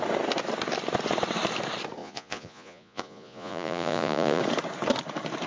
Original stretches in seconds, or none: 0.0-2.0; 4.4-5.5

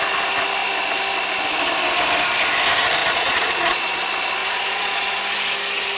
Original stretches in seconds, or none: 0.0-3.0; 4.0-4.4; 5.2-6.0